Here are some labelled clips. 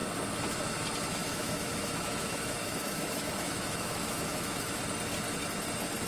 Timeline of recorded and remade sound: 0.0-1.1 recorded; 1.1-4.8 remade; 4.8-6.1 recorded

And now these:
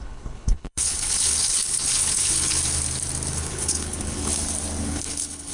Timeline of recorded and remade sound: 0.0-2.6 remade; 2.6-3.3 recorded; 3.3-4.3 remade; 4.3-4.8 recorded; 4.8-5.5 remade

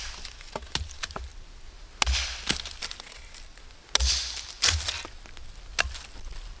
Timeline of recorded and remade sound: 0.0-6.6 recorded